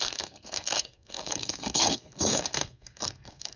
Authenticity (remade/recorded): remade